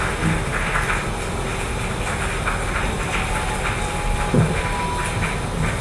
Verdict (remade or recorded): recorded